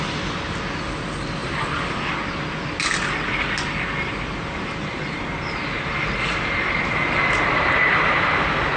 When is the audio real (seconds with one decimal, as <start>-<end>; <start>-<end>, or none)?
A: 0.0-1.4; 2.0-8.8